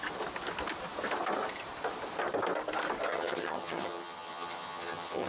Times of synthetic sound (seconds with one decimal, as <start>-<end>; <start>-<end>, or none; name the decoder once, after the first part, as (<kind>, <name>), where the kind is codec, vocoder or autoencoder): 3.1-5.3 (vocoder, HiFi-GAN)